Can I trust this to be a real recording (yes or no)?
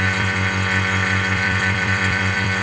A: no